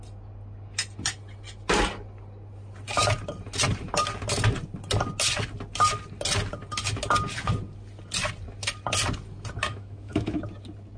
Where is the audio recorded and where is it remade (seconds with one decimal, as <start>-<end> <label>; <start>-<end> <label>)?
0.0-9.7 recorded; 9.7-10.4 remade; 10.4-11.0 recorded